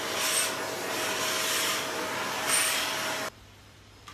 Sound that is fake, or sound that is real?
fake